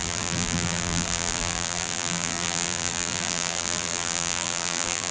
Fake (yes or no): yes